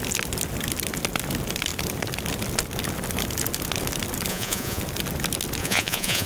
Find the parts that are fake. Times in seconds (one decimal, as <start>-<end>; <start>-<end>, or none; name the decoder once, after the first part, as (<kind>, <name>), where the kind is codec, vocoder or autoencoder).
4.3-4.8 (vocoder, Vocos); 5.6-6.3